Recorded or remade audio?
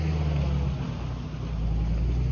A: recorded